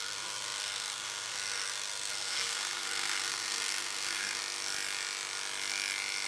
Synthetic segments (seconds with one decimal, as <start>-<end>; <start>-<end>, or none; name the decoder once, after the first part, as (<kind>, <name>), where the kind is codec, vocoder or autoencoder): 0.0-4.4 (codec, SNAC)